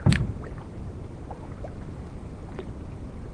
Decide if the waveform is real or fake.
real